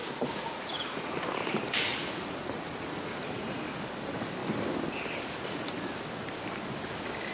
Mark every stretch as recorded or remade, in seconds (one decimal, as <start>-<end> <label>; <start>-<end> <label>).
0.0-1.2 remade; 1.2-1.9 recorded; 1.9-3.4 remade; 3.4-7.3 recorded